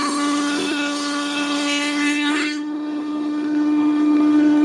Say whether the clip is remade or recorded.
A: remade